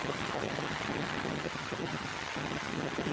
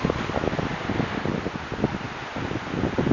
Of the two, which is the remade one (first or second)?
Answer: first